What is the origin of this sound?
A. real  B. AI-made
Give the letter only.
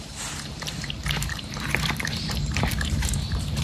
B